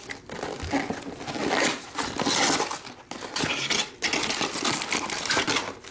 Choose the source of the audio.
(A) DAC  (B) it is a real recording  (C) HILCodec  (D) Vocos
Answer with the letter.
B